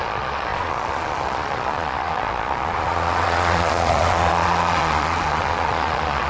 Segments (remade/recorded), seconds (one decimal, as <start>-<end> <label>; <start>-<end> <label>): 0.0-6.3 remade